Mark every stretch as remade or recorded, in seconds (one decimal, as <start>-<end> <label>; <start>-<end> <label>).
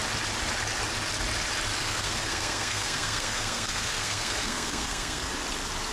0.0-1.8 recorded; 1.8-5.3 remade; 5.3-5.9 recorded